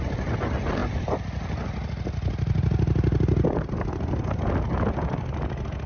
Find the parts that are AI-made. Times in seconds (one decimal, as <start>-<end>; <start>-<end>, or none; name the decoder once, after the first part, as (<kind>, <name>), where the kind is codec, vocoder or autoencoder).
none